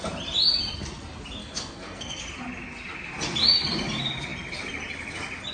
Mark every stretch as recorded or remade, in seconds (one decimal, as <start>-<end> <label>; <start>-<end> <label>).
0.0-1.4 recorded; 1.4-2.2 remade; 2.2-5.5 recorded